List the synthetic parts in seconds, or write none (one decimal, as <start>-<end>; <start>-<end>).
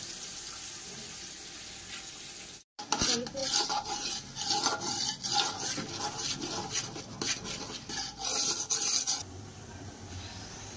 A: none